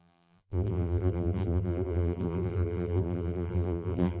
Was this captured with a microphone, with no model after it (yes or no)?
no